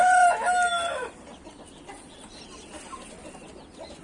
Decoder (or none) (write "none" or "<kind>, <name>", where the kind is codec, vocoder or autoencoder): none